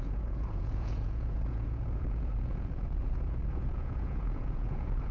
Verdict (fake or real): fake